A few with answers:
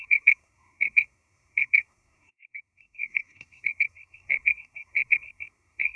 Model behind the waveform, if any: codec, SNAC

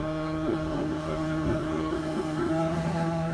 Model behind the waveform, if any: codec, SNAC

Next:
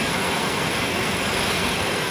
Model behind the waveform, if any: codec, SNAC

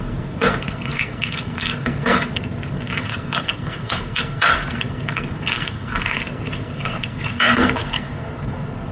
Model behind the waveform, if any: codec, SNAC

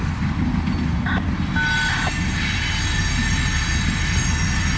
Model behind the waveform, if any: none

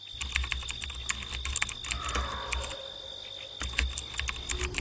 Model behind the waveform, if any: none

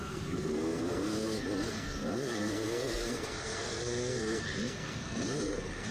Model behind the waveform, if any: codec, SNAC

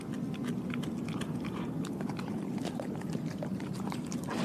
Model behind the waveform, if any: none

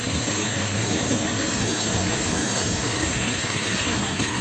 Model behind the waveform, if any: codec, SNAC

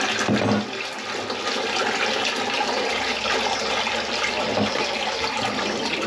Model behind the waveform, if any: none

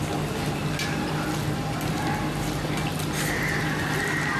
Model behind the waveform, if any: none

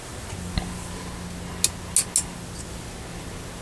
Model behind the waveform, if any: none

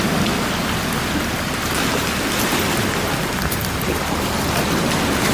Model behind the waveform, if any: none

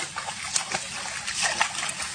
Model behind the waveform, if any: none